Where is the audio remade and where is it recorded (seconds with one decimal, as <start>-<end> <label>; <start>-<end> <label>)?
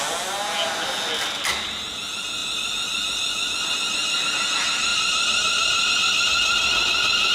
0.0-4.9 recorded; 4.9-5.9 remade; 5.9-7.3 recorded